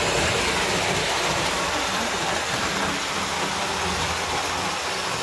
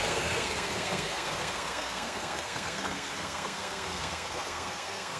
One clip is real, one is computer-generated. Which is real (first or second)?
first